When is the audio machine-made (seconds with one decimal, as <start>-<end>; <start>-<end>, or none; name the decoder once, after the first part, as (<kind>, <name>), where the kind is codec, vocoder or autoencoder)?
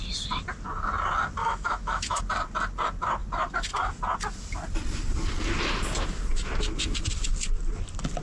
1.4-2.2 (autoencoder, DAC-VAE)